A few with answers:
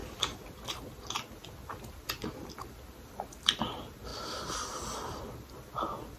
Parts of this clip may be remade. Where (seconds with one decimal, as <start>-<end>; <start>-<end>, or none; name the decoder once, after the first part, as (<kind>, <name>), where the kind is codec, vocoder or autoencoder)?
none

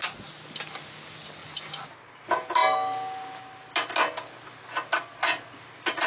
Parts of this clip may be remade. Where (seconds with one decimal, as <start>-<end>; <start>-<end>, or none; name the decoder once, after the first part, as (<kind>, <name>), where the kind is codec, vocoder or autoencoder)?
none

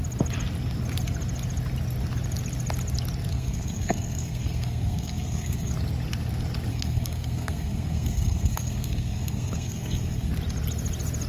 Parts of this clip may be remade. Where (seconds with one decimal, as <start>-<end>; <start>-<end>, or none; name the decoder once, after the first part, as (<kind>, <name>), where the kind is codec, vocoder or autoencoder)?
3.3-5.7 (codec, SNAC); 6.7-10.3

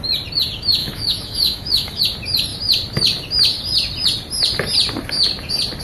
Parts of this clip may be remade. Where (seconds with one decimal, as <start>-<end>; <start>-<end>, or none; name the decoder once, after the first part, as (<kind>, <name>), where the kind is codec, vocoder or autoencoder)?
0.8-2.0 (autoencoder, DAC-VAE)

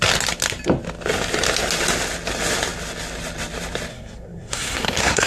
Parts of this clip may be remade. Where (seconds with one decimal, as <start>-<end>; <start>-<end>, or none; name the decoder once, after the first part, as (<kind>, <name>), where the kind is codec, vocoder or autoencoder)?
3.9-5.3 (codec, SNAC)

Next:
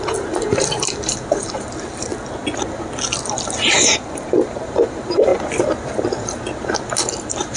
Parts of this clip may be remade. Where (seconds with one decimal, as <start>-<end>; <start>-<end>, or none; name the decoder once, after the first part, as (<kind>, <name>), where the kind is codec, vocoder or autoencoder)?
0.0-2.1 (vocoder, BigVGAN v2); 3.6-5.3; 7.0-7.6